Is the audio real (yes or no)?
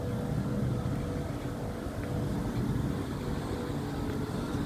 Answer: yes